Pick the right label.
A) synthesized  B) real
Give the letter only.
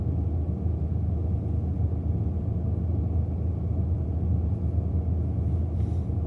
B